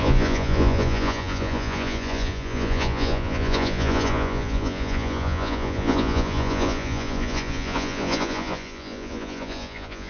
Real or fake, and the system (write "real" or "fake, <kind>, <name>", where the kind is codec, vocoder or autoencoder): fake, vocoder, Vocos